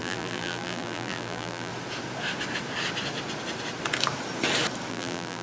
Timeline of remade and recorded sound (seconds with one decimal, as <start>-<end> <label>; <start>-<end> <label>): 0.0-1.7 remade; 1.7-4.9 recorded; 4.9-5.4 remade